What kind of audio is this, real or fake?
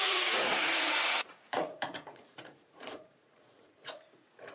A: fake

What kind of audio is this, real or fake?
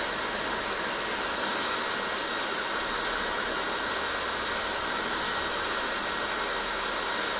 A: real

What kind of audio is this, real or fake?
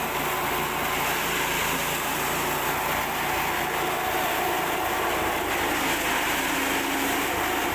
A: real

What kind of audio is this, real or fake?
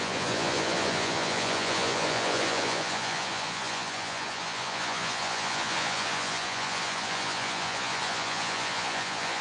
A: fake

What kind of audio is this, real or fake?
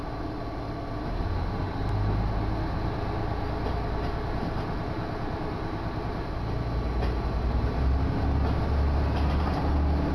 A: real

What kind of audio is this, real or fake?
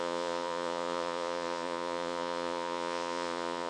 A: fake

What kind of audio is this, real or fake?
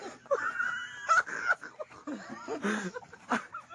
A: real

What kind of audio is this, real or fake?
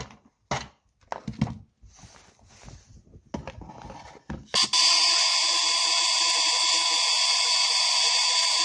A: real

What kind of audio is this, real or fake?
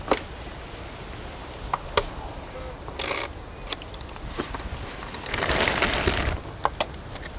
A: real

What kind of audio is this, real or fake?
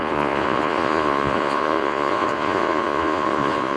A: fake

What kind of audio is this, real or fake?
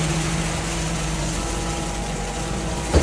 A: fake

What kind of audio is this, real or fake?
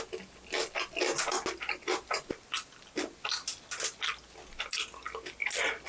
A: real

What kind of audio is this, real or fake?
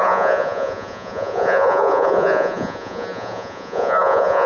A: fake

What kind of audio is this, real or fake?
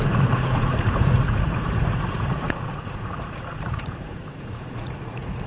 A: fake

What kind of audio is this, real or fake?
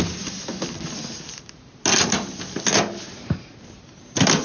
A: real